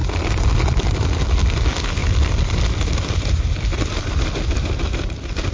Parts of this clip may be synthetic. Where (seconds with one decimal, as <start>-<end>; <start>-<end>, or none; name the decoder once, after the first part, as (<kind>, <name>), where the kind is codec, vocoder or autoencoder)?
none

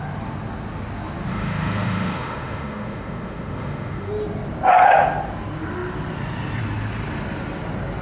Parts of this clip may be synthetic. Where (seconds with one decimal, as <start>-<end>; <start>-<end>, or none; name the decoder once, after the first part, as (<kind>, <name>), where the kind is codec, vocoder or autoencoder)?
1.3-4.1 (autoencoder, DAC-VAE)

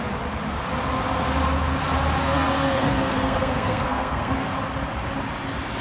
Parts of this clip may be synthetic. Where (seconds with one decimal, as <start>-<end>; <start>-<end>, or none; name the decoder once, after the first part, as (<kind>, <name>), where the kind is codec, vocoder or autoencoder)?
2.2-4.5 (codec, SNAC)